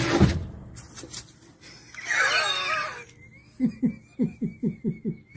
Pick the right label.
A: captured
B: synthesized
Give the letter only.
A